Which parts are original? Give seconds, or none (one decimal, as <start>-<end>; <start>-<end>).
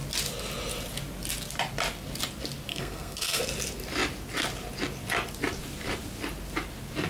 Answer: 0.0-2.7; 3.4-7.1